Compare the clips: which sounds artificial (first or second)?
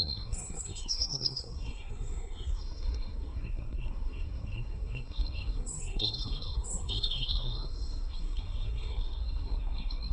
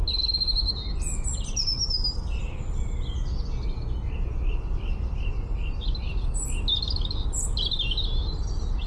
first